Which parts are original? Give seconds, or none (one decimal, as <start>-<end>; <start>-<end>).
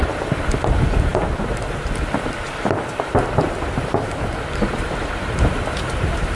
0.0-6.4